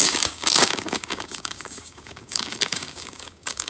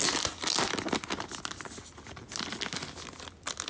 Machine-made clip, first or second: first